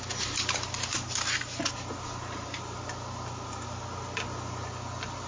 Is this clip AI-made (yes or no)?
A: no